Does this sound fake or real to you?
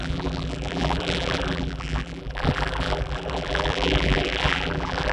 fake